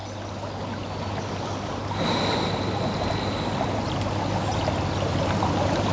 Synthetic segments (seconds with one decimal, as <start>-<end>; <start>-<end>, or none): none